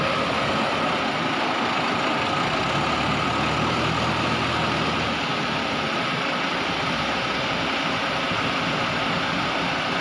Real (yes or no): yes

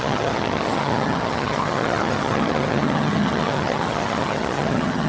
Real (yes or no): no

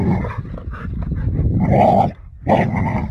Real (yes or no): yes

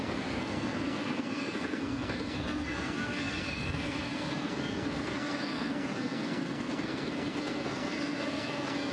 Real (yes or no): no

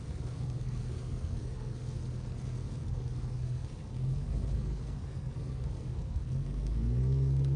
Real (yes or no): no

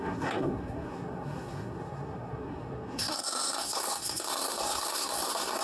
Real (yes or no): no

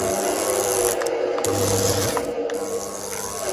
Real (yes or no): yes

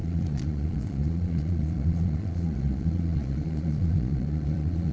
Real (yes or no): no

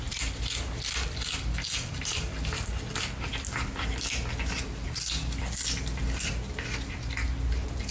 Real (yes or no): yes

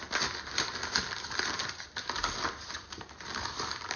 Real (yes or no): yes